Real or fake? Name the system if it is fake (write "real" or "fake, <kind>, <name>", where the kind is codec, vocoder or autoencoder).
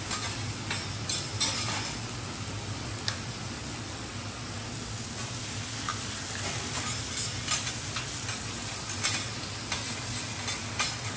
real